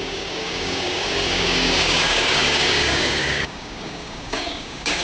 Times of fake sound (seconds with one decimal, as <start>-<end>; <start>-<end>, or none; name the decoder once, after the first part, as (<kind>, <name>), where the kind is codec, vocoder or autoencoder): 0.0-5.0 (codec, DAC)